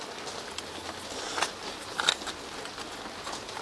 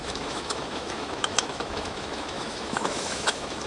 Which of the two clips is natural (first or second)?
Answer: first